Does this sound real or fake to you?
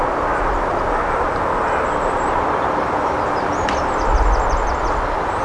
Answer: real